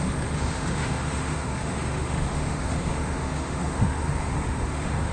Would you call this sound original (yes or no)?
no